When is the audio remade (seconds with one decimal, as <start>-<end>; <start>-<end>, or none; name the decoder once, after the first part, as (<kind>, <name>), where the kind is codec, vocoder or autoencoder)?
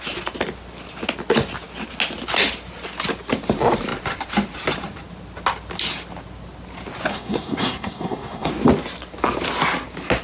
7.1-8.5 (codec, SNAC)